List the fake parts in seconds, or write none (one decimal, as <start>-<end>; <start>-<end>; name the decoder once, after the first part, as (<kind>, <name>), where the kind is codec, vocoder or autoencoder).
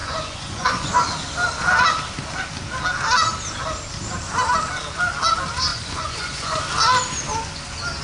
0.0-0.9 (vocoder, Vocos); 5.7-6.6